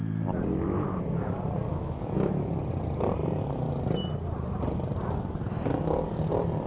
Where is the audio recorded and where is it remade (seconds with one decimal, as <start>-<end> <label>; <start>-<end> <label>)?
0.0-1.7 recorded; 1.7-2.5 remade; 2.5-6.7 recorded